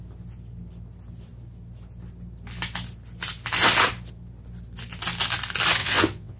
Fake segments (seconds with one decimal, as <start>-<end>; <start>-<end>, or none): 5.8-6.4